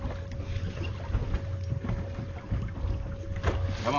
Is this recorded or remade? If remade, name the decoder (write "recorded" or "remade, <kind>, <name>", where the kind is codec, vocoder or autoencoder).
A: recorded